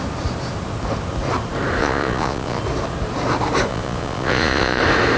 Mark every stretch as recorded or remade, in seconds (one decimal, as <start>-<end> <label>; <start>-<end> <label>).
0.0-1.8 recorded; 1.8-2.6 remade; 2.6-3.7 recorded; 3.7-4.8 remade; 4.8-5.2 recorded